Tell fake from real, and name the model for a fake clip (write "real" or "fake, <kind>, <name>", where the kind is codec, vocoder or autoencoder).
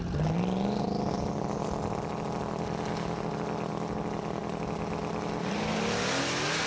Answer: real